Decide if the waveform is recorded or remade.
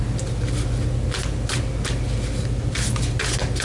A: recorded